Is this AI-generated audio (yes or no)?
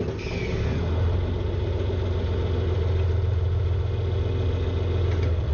no